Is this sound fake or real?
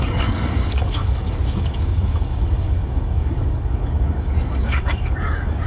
fake